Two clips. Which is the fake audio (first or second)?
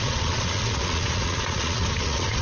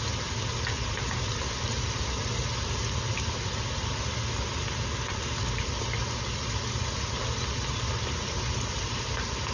first